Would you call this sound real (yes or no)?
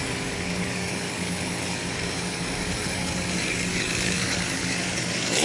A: no